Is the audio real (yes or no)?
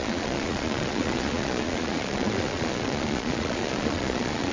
no